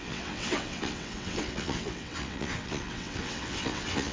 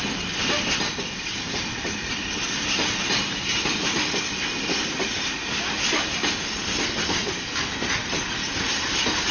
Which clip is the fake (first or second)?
first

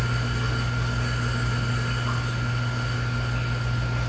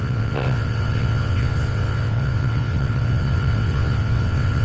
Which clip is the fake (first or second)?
second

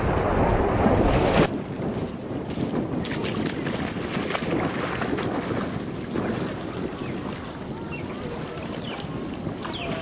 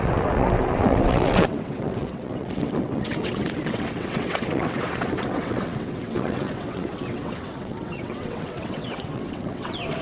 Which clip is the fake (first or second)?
second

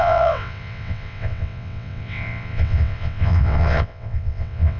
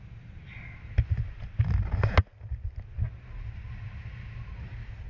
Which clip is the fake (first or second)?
first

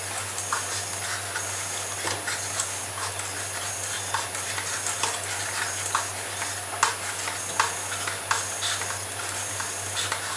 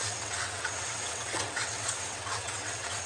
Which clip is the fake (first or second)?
second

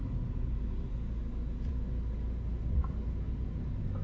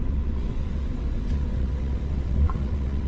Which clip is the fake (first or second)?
second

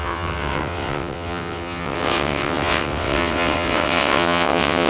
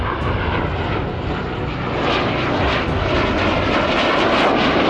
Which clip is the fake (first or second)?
first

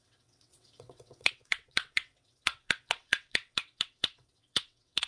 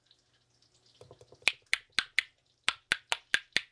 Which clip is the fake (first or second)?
first